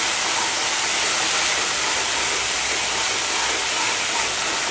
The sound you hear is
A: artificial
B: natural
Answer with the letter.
B